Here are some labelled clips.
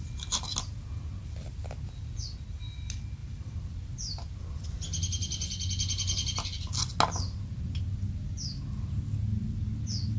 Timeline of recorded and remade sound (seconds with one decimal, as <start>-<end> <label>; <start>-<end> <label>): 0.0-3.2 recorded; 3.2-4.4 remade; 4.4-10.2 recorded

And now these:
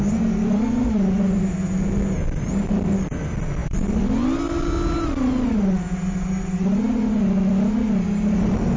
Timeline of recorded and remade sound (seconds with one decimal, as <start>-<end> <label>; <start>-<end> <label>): 0.0-8.8 recorded

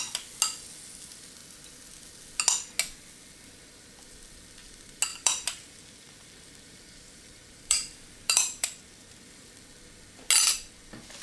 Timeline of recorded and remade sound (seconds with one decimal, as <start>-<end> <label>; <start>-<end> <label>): 0.0-5.1 recorded; 5.1-9.5 remade; 9.5-11.2 recorded